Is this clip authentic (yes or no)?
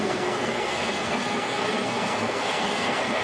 no